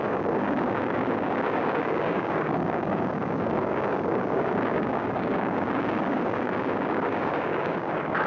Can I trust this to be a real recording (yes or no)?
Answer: no